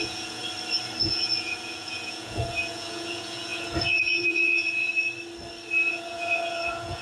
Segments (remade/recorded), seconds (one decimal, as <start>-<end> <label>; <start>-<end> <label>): 0.0-0.4 remade; 0.4-1.0 recorded; 1.0-4.9 remade; 4.9-5.9 recorded; 5.9-7.0 remade